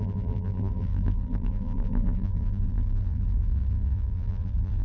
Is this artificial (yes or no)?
yes